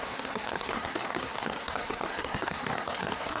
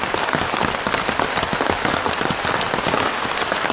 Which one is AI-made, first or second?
first